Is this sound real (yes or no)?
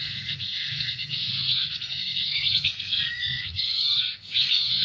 no